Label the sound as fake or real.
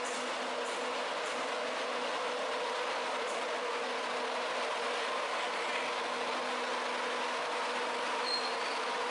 real